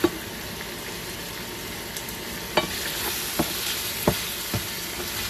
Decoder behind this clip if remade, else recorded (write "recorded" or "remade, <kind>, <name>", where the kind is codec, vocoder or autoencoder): recorded